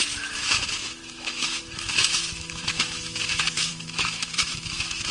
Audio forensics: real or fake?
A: fake